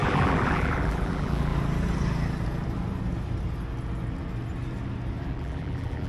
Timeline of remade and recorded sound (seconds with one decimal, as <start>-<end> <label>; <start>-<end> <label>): 0.0-1.5 remade; 1.5-5.2 recorded; 5.2-6.1 remade